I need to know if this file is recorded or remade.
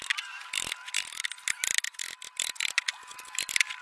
recorded